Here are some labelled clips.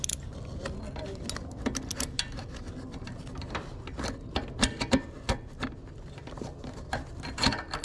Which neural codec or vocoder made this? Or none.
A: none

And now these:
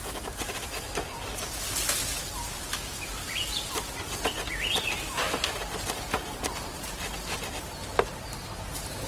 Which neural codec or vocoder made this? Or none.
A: none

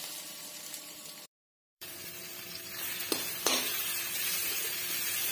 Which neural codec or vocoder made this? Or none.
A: vocoder, BigVGAN v2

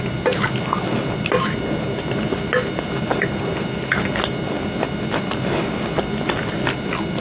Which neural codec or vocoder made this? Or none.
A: none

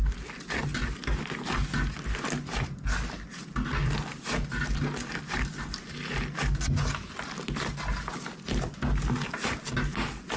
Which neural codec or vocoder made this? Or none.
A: none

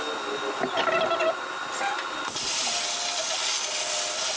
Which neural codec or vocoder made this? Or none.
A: none